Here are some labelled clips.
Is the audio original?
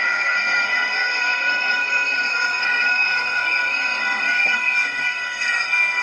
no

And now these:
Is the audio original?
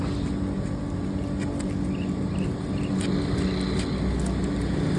yes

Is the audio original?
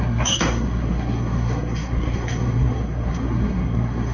no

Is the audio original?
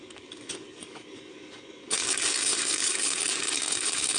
no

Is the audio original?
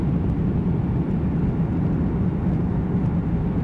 yes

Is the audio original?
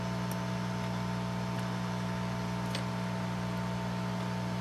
yes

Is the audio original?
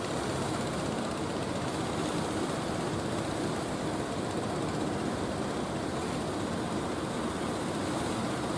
yes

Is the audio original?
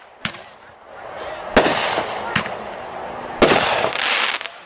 yes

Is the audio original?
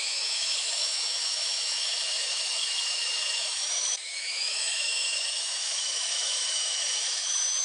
no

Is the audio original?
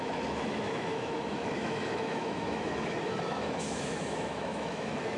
no